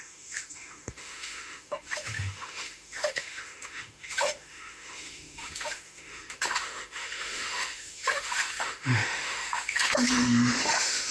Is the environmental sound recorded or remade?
remade